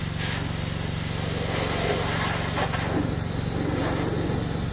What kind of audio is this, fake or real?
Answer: real